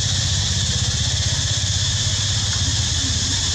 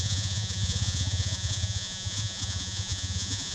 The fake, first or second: second